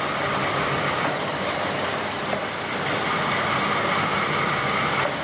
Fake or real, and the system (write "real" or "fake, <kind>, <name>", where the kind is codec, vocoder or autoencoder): fake, vocoder, BigVGAN v2